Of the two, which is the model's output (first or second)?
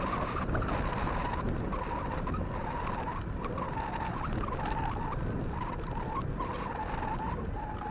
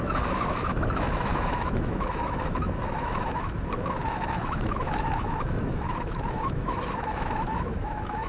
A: second